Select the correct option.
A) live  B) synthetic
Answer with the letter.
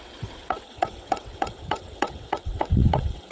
B